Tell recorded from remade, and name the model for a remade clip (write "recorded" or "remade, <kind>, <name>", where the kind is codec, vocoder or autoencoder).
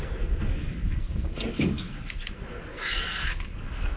remade, codec, SNAC